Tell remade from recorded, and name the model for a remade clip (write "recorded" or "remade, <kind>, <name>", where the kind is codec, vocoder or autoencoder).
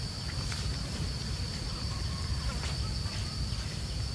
remade, vocoder, BigVGAN v2